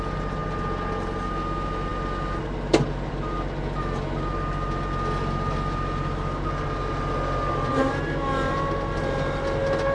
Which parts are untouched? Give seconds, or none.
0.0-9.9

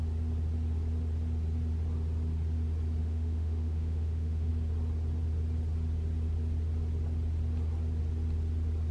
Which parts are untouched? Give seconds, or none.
0.0-3.0; 4.5-8.9

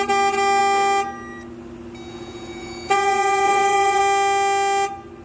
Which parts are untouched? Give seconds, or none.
0.0-2.1; 4.0-5.2

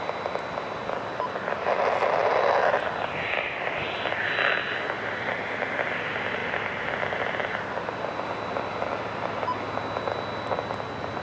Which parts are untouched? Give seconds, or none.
0.0-0.8; 2.3-6.4; 8.7-11.2

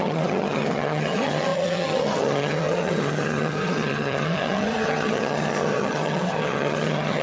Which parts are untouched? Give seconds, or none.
none

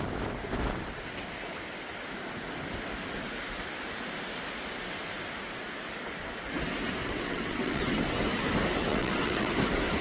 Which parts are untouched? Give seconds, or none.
0.0-7.0; 7.8-8.9; 9.5-10.0

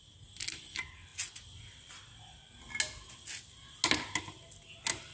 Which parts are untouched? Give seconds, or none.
0.0-5.1